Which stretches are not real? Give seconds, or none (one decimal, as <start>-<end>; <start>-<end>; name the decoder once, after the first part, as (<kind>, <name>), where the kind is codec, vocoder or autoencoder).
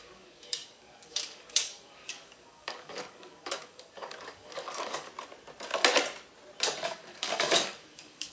0.0-5.1 (codec, DAC); 6.9-8.3